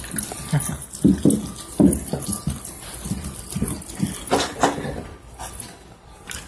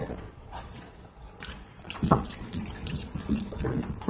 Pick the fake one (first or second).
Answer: second